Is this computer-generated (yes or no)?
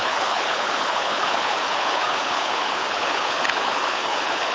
yes